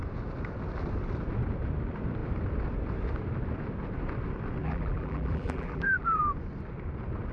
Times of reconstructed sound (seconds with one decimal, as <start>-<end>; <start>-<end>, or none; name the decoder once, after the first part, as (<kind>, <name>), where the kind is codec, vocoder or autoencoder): 4.6-6.2 (vocoder, BigVGAN v2)